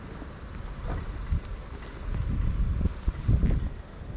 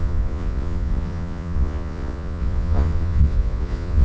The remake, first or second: second